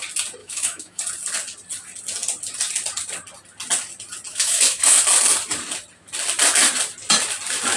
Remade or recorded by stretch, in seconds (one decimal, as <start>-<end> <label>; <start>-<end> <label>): 0.0-0.4 recorded; 0.4-1.0 remade; 1.0-4.3 recorded; 4.3-5.0 remade; 5.0-7.8 recorded